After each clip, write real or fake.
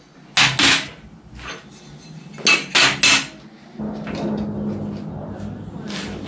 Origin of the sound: real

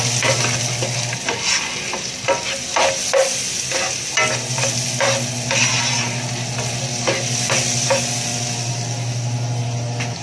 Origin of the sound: real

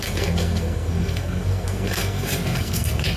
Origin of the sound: fake